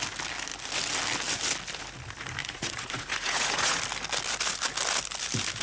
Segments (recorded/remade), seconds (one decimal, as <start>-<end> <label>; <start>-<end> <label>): 0.0-2.4 recorded; 2.4-3.8 remade; 3.8-5.6 recorded